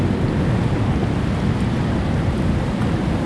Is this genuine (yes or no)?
yes